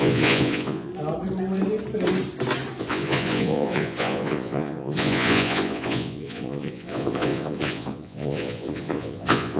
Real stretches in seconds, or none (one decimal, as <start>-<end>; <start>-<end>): 0.9-2.8